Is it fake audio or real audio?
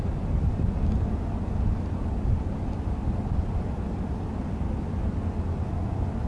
real